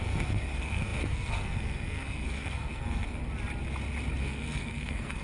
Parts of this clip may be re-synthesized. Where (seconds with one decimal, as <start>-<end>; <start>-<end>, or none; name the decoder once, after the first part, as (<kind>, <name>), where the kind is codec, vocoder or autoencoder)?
0.0-3.2 (codec, SNAC); 4.2-5.2